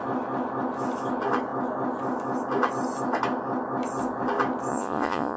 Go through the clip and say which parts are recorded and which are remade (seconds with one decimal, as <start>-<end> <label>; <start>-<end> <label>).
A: 0.0-4.7 recorded; 4.7-5.4 remade